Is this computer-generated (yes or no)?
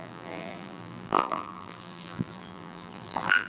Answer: yes